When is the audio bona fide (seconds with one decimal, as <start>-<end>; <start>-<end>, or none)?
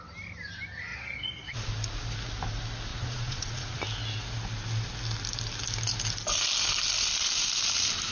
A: 0.0-0.9; 1.7-2.9; 3.8-8.1